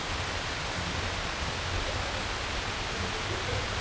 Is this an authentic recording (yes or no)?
yes